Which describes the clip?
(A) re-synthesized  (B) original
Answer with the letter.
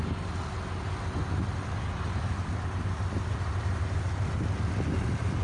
B